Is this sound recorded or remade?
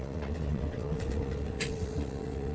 remade